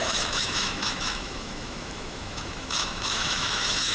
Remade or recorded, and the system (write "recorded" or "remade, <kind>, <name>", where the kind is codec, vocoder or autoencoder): remade, autoencoder, DAC-VAE